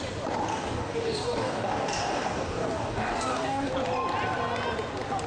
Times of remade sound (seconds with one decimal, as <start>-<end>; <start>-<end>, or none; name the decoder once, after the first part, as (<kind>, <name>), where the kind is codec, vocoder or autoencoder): 0.5-3.7 (codec, DAC)